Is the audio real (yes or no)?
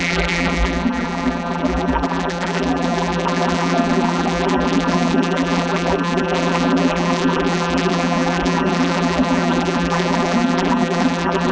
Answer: no